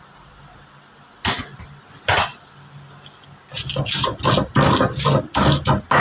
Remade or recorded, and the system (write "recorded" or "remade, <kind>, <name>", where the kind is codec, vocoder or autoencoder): recorded